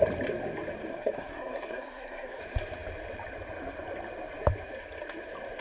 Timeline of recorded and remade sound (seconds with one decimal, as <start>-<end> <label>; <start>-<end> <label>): 0.0-0.9 recorded; 0.9-2.4 remade; 2.4-5.6 recorded